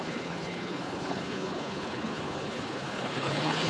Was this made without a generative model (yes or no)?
no